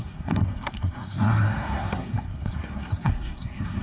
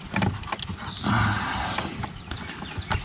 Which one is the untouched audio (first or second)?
second